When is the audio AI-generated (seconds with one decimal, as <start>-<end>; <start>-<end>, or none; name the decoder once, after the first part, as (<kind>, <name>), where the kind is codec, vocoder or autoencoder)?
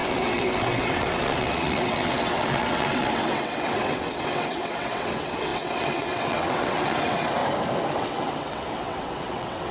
0.0-7.4 (vocoder, WaveNeXt); 7.9-9.7